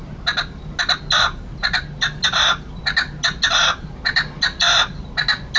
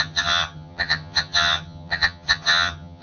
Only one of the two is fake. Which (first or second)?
second